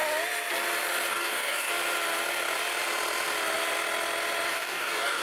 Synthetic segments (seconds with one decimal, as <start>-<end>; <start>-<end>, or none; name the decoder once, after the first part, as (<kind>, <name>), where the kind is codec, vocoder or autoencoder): 1.1-1.7 (codec, DAC); 4.5-5.2